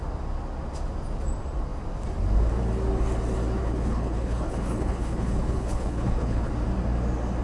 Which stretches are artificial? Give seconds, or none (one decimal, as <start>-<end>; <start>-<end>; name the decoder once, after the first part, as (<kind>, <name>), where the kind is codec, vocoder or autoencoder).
3.6-6.5 (codec, HILCodec)